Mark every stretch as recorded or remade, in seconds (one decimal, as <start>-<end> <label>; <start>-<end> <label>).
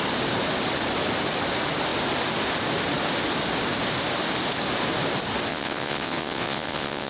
0.0-5.5 recorded; 5.5-7.1 remade